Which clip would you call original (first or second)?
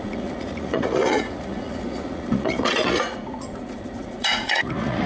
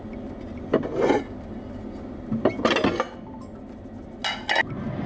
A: second